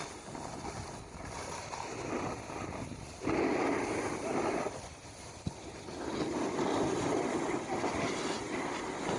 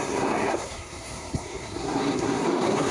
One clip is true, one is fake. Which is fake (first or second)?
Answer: second